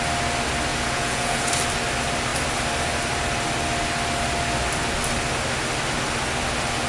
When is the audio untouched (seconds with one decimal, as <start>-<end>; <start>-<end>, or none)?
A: 0.0-0.7; 1.5-6.9